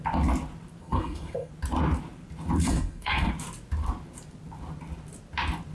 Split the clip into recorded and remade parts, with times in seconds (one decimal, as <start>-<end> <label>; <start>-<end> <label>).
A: 0.0-0.8 recorded; 0.8-1.5 remade; 1.5-2.6 recorded; 2.6-3.3 remade; 3.3-5.7 recorded